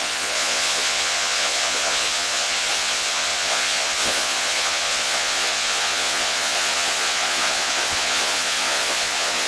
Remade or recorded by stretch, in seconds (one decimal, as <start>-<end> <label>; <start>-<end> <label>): 0.0-9.5 remade